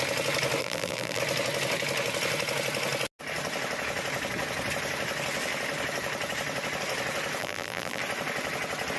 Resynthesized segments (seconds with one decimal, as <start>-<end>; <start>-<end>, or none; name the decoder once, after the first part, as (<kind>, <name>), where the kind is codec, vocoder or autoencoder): 0.6-1.2 (vocoder, BigVGAN v2); 7.4-8.0